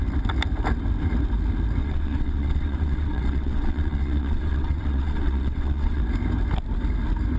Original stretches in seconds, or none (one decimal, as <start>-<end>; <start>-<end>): 0.0-1.8; 6.0-7.4

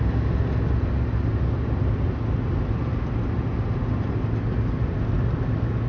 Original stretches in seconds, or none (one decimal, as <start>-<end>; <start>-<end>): 0.0-5.9

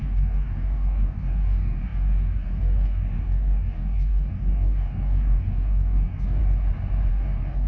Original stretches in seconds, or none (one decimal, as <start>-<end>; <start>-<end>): 6.4-7.1

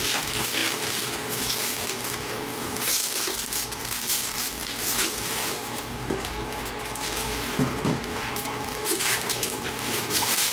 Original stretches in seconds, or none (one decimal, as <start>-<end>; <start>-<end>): none